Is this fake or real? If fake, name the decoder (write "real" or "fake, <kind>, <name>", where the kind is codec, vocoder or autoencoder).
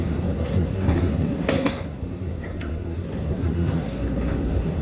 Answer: fake, codec, SNAC